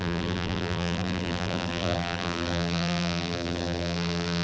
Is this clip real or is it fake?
fake